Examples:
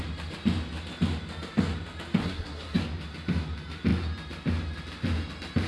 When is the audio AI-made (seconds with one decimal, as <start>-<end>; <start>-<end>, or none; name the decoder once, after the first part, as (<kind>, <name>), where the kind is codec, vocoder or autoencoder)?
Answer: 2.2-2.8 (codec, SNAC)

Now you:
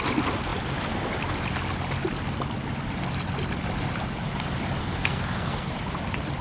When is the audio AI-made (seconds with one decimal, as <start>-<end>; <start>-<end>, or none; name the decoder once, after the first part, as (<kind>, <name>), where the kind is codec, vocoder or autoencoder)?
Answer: 4.8-5.7 (codec, SNAC)

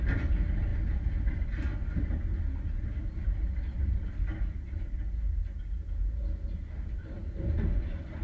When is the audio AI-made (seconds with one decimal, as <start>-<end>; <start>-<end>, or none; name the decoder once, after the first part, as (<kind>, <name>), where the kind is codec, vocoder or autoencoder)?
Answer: none